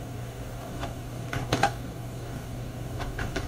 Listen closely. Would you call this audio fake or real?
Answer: fake